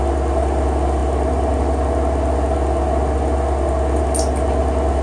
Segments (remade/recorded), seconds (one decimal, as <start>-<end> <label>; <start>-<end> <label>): 0.0-5.0 recorded